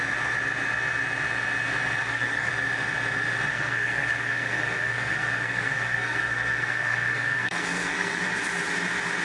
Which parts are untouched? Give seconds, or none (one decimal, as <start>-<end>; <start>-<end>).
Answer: 0.0-2.0; 2.5-3.5; 8.2-9.2